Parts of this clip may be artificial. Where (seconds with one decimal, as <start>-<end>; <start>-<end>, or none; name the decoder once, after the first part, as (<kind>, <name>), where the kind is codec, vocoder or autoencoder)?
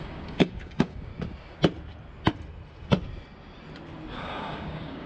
0.0-1.1 (codec, DAC); 4.2-5.1